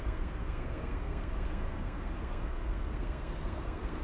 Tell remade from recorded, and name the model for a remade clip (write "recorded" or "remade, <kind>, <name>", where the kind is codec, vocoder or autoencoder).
remade, codec, SNAC